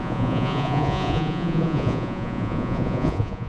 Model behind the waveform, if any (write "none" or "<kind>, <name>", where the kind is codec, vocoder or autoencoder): vocoder, Vocos